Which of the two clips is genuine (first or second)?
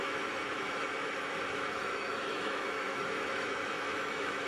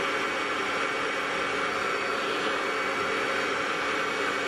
second